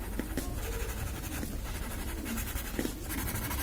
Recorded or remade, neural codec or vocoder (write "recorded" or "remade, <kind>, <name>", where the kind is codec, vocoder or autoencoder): recorded